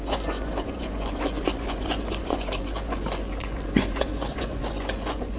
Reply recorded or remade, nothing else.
remade